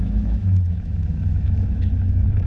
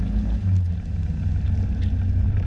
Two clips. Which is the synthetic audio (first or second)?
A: first